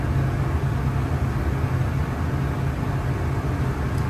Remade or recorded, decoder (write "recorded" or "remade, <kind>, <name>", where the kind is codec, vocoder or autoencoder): recorded